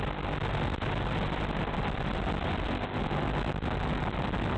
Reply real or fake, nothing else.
real